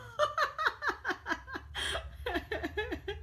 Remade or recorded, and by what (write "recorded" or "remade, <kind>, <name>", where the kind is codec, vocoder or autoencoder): recorded